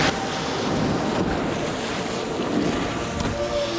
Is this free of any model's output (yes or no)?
yes